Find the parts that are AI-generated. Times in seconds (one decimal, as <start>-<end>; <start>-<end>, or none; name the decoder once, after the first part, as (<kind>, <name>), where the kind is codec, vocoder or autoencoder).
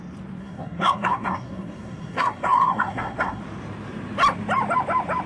0.4-3.4 (codec, SNAC)